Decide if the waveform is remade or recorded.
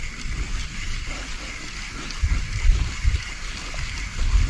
recorded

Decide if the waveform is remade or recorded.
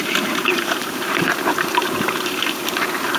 remade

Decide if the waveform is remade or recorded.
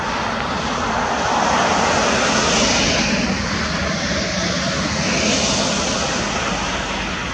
recorded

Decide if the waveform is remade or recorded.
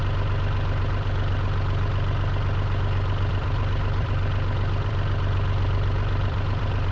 remade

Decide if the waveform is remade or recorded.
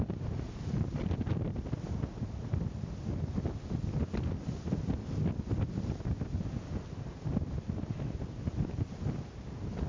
recorded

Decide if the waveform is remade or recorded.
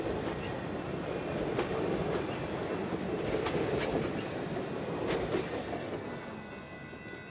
recorded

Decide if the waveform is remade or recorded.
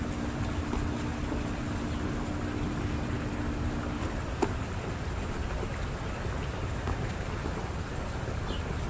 recorded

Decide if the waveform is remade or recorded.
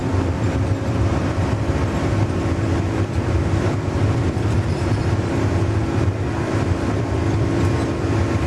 remade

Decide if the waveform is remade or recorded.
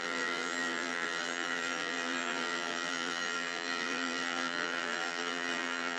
remade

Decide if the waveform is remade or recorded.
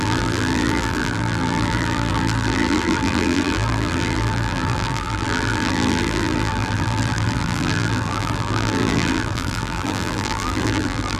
remade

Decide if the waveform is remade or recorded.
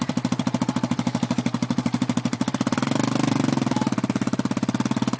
remade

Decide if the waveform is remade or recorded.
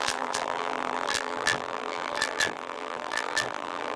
remade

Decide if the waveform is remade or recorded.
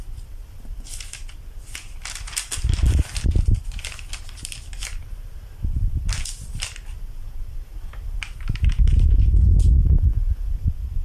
recorded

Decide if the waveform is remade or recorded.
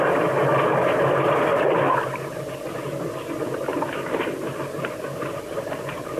recorded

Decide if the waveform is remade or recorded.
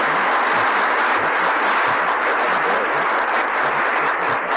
recorded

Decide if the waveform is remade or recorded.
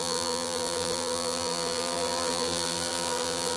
remade